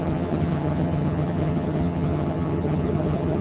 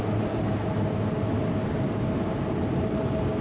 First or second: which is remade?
first